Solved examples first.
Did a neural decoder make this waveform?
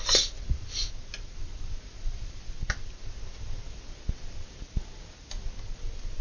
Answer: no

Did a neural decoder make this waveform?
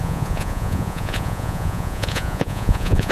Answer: yes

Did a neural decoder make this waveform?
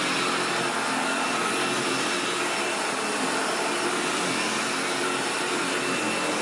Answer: no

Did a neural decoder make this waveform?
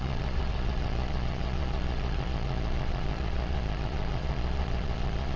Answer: yes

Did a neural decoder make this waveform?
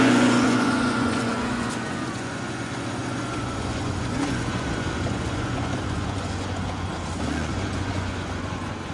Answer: yes